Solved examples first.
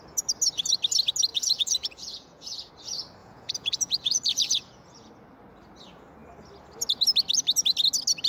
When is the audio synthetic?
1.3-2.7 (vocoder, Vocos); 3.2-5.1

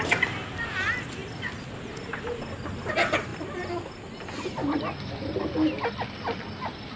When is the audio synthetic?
none

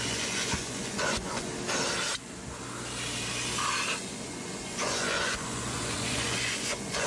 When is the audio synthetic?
0.0-1.5 (vocoder, Vocos); 4.0-7.1